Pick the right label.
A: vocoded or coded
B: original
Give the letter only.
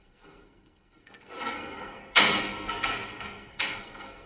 A